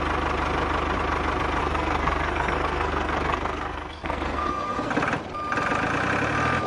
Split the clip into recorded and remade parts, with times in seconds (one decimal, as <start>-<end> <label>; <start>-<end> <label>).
0.0-1.6 recorded; 1.6-4.9 remade; 4.9-6.7 recorded